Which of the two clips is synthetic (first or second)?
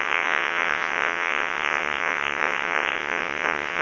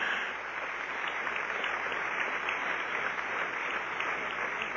first